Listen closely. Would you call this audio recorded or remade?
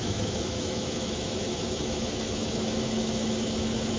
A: remade